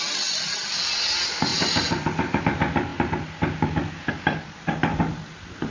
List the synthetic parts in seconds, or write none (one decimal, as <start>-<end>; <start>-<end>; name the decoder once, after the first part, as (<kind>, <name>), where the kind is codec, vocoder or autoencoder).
1.5-2.4 (vocoder, BigVGAN v2)